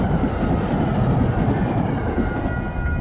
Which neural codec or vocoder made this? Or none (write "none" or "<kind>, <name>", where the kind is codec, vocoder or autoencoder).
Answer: none